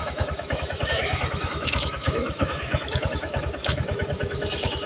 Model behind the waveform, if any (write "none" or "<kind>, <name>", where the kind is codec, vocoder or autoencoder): autoencoder, DAC-VAE